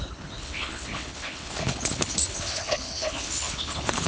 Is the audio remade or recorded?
remade